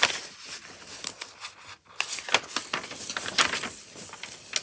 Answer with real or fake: real